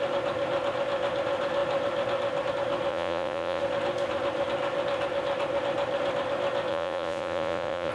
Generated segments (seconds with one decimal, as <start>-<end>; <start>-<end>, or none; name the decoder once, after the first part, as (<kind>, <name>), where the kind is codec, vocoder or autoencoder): 2.9-3.6 (vocoder, Vocos); 6.7-7.9